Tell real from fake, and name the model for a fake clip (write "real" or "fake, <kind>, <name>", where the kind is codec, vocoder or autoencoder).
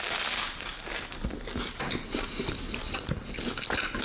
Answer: real